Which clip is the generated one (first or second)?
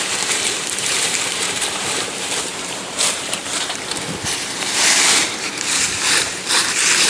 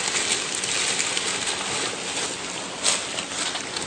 first